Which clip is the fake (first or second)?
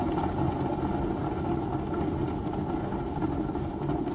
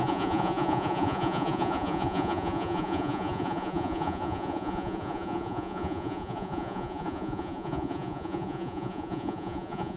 second